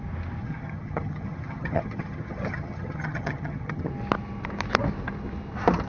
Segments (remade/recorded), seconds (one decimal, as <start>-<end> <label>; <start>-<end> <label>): 0.0-0.4 recorded; 0.4-3.9 remade; 3.9-5.9 recorded